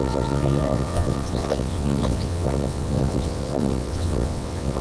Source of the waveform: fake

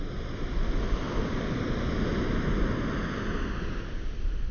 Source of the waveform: real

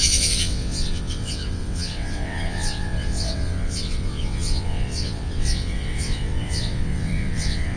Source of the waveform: fake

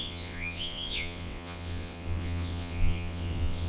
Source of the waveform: fake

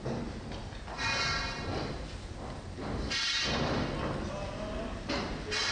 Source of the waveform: real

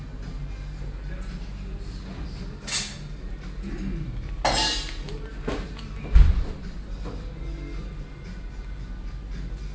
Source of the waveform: real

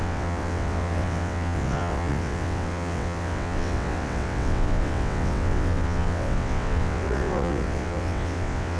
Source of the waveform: fake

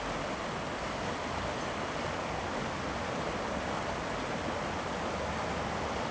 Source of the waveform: real